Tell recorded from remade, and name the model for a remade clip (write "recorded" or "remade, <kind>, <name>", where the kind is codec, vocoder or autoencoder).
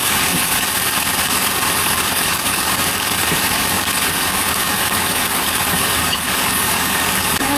remade, codec, DAC